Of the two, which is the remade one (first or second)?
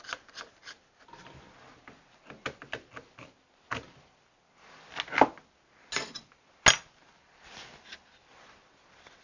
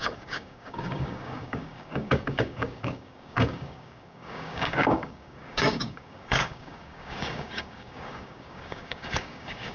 second